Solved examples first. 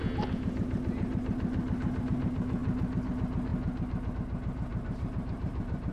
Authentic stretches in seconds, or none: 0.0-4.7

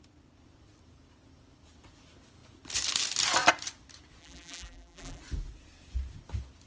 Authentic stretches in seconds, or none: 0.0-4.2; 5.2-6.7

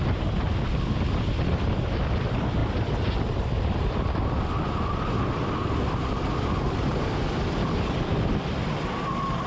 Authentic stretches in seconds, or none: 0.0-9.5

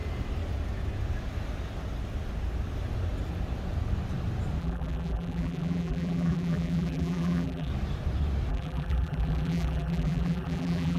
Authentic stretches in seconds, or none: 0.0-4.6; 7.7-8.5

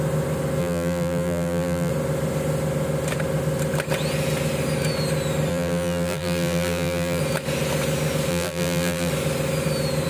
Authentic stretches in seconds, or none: 0.0-0.6; 1.9-5.5; 7.2-8.3; 9.1-10.1

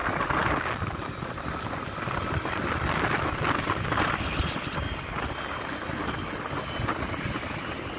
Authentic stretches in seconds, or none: 0.0-8.0

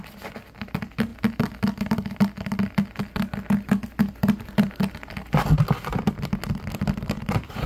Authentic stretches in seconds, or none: 0.0-7.7

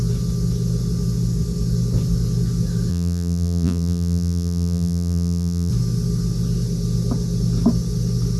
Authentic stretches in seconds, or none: 0.0-2.9; 5.7-8.4